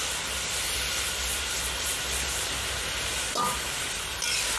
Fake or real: real